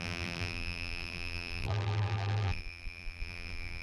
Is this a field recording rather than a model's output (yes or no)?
no